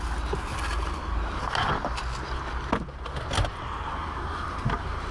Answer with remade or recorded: recorded